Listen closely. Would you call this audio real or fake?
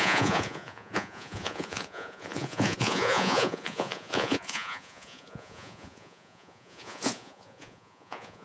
fake